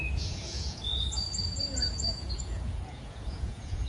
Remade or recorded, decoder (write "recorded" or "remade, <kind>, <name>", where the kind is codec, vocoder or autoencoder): remade, vocoder, Vocos